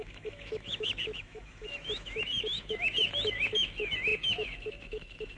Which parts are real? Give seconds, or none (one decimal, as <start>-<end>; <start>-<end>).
none